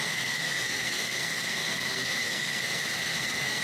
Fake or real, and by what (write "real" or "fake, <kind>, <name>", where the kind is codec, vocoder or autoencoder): fake, codec, SNAC